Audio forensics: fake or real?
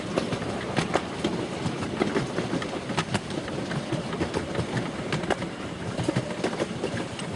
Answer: real